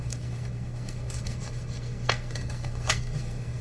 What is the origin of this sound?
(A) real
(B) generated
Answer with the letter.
B